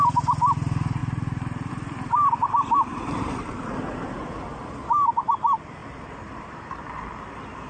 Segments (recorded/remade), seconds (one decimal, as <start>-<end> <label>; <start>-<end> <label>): 0.0-2.9 recorded; 2.9-4.2 remade; 4.2-5.8 recorded; 5.8-7.0 remade; 7.0-7.7 recorded